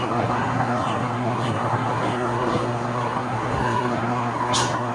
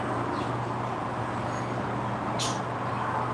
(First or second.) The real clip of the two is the second